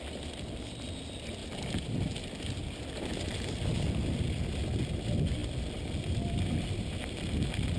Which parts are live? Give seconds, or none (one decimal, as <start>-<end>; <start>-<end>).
0.0-5.4